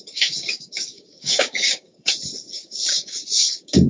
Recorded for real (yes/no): no